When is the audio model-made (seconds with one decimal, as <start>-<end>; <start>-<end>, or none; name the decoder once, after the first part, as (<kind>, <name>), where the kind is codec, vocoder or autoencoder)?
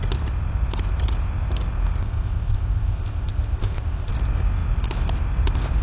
2.0-4.1 (codec, ZipCodec)